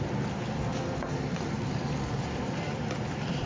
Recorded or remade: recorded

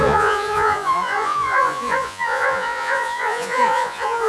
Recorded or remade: remade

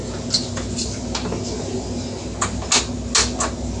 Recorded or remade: recorded